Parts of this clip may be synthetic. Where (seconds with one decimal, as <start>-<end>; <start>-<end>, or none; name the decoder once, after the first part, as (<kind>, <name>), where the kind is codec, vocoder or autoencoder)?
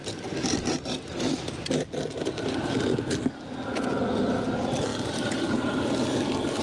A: none